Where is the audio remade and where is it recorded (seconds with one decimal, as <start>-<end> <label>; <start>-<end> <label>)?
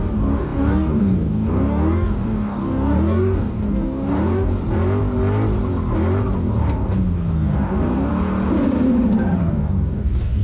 0.0-4.5 remade; 4.5-6.4 recorded; 6.4-8.1 remade; 8.1-9.4 recorded; 9.4-10.4 remade